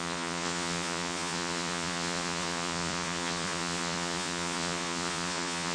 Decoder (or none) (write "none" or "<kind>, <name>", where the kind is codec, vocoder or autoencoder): vocoder, Vocos